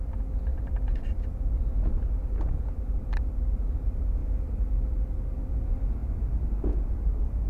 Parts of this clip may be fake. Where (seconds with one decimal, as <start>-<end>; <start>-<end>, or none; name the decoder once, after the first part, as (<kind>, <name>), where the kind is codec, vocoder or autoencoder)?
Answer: 0.5-1.6 (vocoder, BigVGAN v2); 6.0-7.5